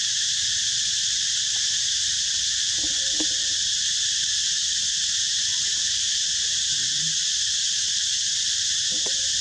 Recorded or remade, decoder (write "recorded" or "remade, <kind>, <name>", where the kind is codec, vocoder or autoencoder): remade, vocoder, BigVGAN v2